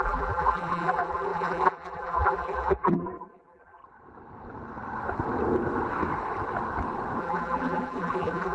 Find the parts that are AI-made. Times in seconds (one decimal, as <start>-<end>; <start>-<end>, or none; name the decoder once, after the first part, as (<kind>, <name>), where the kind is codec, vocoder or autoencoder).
0.0-3.8 (vocoder, BigVGAN v2); 7.2-8.5